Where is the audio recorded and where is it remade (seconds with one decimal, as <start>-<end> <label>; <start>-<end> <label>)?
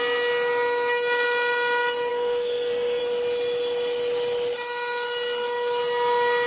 0.0-2.1 recorded; 2.1-3.0 remade; 3.0-6.5 recorded